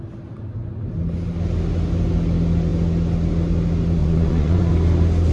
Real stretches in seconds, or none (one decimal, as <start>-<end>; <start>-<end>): 0.0-4.0; 4.7-5.3

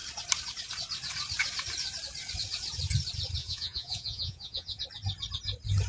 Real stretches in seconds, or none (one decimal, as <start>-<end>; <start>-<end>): 0.0-3.4; 4.8-5.9

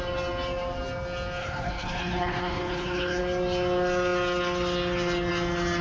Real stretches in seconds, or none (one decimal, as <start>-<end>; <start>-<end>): 0.0-1.4; 3.2-5.8

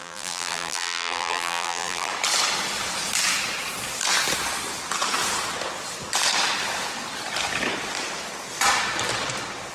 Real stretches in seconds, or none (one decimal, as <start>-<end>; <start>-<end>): 2.1-9.7

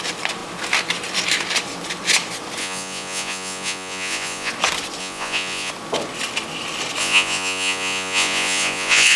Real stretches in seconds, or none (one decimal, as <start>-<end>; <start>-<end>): 0.0-2.6; 4.5-5.0; 5.7-7.0

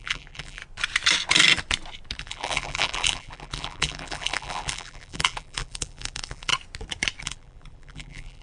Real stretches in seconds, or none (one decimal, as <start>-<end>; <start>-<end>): 0.6-2.2; 6.5-7.2

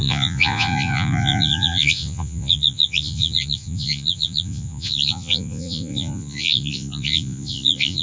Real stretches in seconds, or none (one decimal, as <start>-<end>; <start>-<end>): none

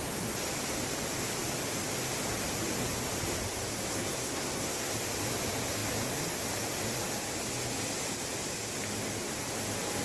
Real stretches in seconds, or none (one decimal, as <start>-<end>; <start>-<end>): 0.0-3.9; 4.9-10.0